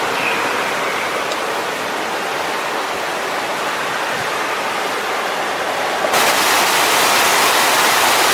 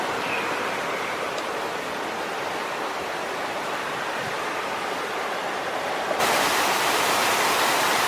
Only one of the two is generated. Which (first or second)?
second